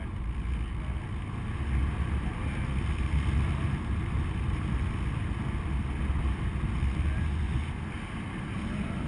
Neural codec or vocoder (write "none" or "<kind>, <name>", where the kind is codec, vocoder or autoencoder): none